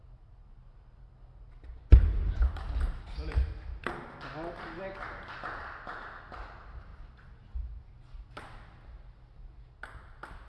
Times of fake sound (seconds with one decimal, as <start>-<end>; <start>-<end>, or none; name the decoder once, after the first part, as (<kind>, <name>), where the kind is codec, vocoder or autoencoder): none